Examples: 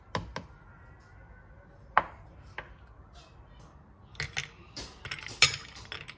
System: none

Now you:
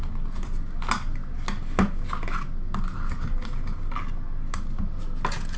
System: none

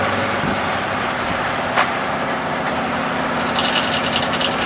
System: none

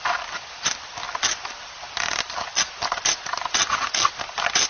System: none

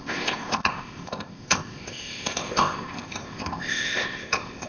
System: codec, ZipCodec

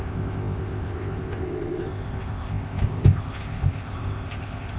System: codec, ZipCodec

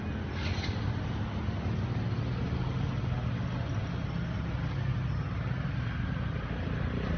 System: none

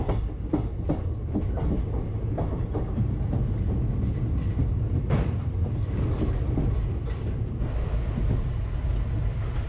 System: none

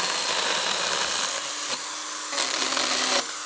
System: none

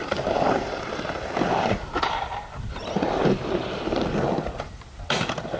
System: none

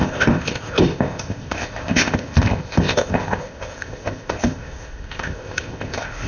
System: codec, ZipCodec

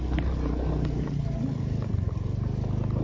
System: none